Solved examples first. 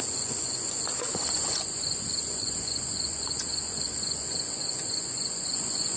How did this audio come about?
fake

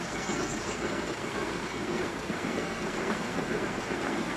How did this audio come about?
fake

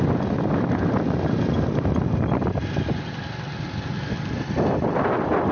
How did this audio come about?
real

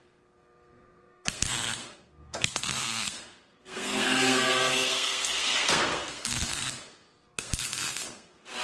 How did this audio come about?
fake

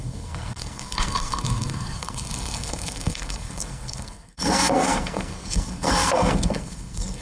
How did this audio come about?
fake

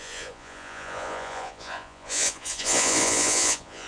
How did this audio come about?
fake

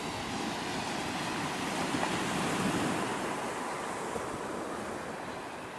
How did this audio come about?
real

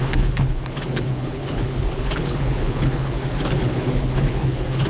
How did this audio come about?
fake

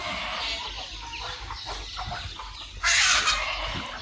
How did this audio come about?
real